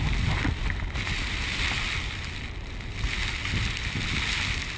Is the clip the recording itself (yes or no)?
yes